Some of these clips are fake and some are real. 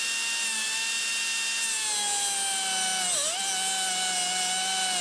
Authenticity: real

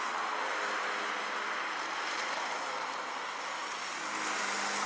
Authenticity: real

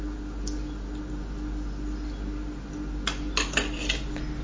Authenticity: real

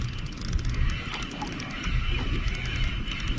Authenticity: real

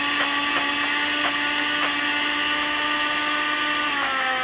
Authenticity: real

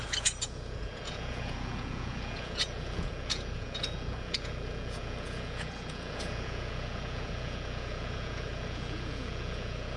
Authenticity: fake